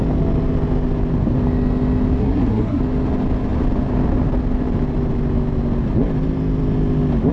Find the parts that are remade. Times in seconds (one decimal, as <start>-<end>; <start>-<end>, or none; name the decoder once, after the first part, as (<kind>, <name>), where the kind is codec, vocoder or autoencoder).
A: 2.2-2.8 (codec, SNAC)